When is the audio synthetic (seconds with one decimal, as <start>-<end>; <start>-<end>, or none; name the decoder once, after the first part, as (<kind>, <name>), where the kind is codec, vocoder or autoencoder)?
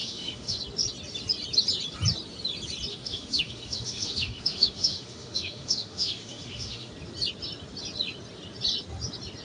0.0-0.6 (autoencoder, DAC-VAE); 2.9-6.9